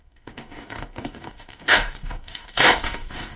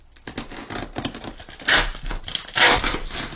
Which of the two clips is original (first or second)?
second